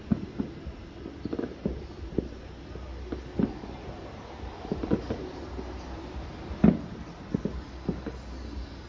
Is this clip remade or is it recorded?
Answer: recorded